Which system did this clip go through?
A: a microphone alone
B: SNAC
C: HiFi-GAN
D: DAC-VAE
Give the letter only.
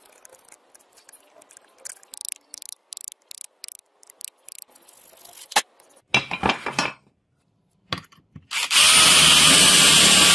A